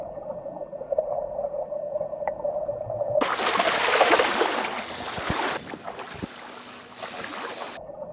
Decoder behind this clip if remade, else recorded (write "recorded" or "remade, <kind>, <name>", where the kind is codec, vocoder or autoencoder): recorded